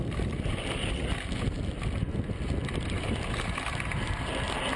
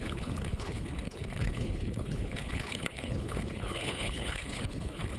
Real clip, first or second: first